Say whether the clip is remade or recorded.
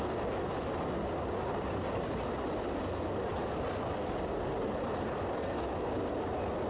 recorded